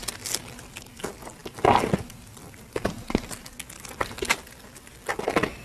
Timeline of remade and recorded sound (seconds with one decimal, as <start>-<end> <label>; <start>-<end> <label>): 0.0-5.6 recorded